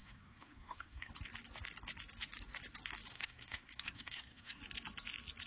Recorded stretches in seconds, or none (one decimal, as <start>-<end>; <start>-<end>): 1.1-3.1; 4.6-5.5